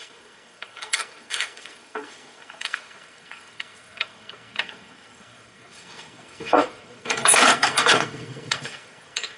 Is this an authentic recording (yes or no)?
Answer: no